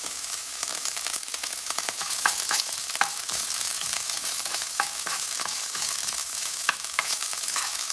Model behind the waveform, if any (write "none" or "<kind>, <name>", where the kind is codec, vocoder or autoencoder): autoencoder, DAC-VAE